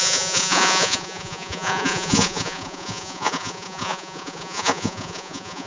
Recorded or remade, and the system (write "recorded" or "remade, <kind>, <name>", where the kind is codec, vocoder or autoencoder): remade, vocoder, Vocos